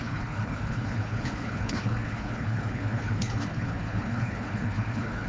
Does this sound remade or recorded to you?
remade